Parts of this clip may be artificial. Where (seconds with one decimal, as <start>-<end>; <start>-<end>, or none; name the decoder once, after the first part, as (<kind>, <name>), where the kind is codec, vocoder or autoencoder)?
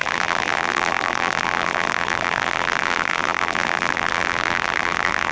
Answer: 0.0-5.3 (vocoder, BigVGAN v2)